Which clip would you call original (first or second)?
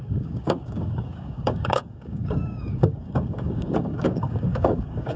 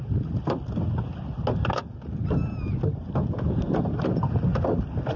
second